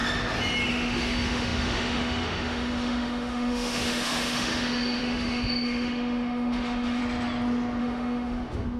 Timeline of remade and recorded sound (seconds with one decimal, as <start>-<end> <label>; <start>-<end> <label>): 0.0-0.7 recorded; 0.7-7.0 remade; 7.0-7.8 recorded; 7.8-8.8 remade